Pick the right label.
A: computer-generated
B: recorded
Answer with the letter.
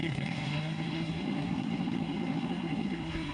A